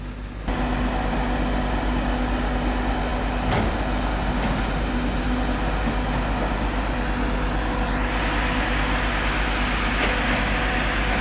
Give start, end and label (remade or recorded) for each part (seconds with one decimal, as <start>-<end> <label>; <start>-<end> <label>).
0.0-11.2 recorded